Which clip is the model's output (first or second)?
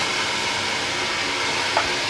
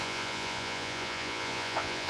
second